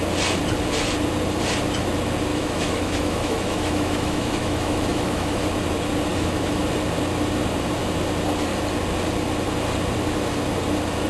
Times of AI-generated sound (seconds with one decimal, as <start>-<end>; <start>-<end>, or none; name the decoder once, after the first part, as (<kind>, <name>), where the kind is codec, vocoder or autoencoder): 2.3-5.4 (autoencoder, DAC-VAE); 6.1-6.6